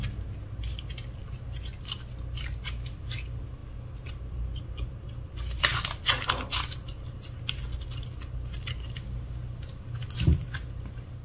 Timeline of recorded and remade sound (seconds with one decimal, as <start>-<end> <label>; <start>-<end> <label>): 0.0-3.6 recorded; 3.6-6.3 remade; 6.3-11.2 recorded